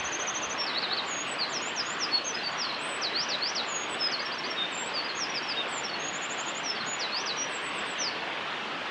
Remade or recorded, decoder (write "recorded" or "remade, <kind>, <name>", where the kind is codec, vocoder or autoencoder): recorded